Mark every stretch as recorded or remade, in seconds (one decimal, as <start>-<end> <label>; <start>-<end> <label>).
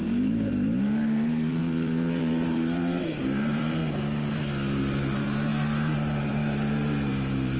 0.0-3.8 remade; 3.8-4.8 recorded; 4.8-7.6 remade